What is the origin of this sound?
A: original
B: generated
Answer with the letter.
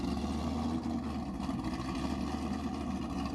A